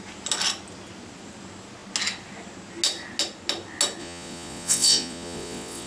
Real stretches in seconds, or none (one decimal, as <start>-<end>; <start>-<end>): 0.0-4.0